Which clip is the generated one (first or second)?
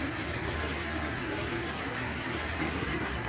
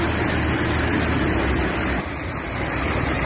first